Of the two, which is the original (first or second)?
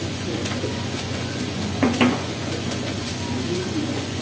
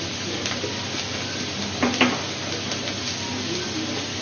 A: second